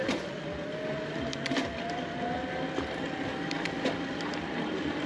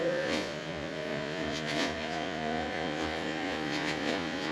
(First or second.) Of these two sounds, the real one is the first